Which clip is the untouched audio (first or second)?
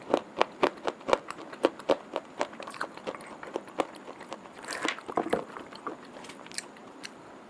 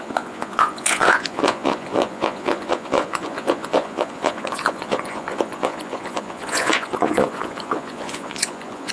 first